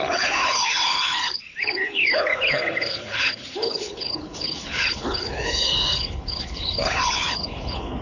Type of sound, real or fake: fake